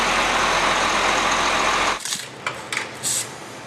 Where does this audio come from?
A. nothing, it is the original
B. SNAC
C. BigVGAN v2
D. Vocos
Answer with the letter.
A